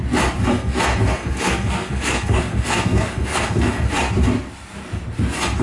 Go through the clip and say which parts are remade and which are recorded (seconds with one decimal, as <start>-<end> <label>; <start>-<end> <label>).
0.0-0.5 recorded; 0.5-3.9 remade; 3.9-5.6 recorded